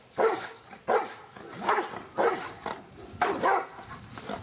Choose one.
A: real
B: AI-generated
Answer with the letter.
A